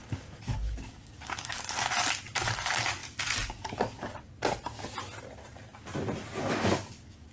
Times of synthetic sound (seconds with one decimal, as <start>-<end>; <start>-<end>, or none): 0.0-1.6; 3.0-4.1; 6.4-7.3